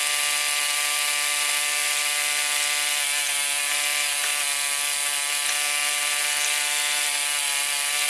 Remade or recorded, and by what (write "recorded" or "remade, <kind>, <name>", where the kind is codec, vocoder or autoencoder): recorded